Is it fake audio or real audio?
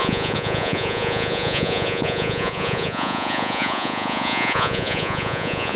fake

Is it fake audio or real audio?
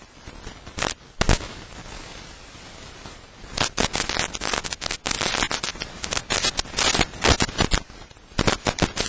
real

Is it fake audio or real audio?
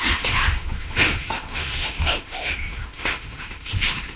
fake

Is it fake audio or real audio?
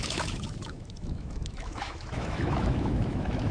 fake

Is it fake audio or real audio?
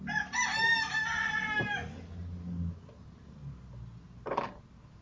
real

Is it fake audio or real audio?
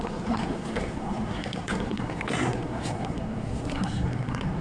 fake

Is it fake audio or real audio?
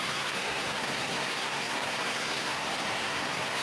fake